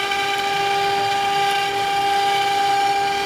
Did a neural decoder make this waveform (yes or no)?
no